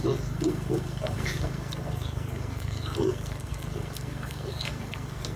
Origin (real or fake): fake